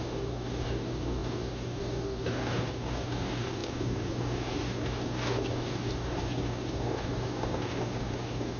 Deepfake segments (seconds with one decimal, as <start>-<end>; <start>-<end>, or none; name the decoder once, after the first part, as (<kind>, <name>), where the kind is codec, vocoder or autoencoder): 0.0-8.6 (codec, DAC)